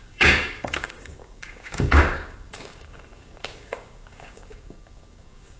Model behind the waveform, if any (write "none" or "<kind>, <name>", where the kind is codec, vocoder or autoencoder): codec, DAC